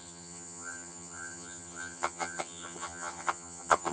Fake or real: fake